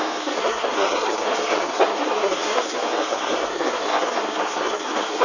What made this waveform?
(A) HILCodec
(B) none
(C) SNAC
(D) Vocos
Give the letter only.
C